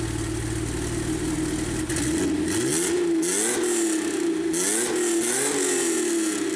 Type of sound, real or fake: real